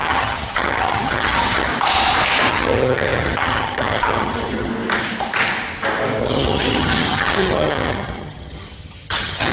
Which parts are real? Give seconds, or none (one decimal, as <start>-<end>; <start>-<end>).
1.7-2.5; 4.7-6.2